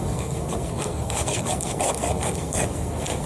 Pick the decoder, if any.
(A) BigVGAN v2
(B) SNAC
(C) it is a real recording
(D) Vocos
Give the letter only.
B